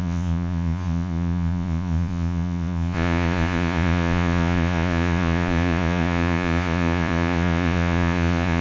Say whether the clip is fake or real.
fake